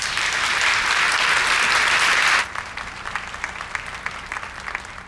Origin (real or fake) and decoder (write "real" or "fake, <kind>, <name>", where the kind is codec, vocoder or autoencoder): real